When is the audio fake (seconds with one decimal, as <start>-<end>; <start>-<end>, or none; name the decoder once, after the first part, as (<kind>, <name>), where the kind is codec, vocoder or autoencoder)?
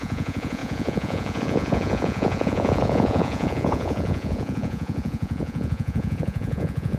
0.0-7.0 (vocoder, Vocos)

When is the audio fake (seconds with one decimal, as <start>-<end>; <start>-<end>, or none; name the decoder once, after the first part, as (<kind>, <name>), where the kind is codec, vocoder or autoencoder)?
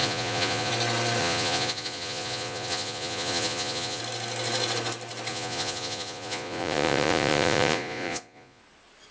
0.0-0.7 (vocoder, Vocos); 1.2-4.0; 5.3-8.6